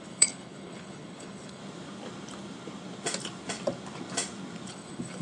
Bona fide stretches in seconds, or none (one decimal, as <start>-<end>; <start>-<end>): 1.6-4.7